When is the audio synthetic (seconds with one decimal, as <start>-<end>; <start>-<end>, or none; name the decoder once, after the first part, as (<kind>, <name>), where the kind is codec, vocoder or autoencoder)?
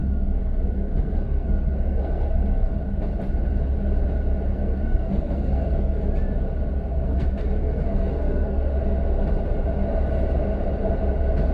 0.0-2.8 (codec, SNAC); 4.5-6.1; 6.9-8.7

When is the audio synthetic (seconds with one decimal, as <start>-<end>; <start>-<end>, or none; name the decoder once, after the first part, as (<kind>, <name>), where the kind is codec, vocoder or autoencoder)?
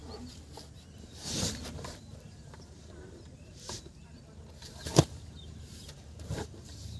0.8-4.0 (vocoder, BigVGAN v2); 5.2-7.0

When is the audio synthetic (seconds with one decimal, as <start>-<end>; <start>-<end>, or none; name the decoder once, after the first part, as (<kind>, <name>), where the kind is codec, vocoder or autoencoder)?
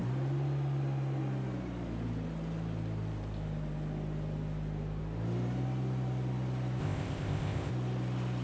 6.8-7.7 (codec, ZipCodec)